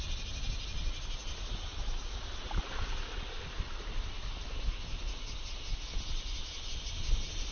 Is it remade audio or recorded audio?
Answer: recorded